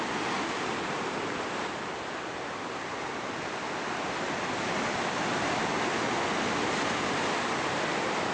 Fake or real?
real